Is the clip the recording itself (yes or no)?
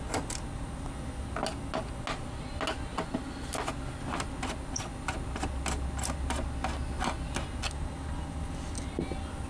yes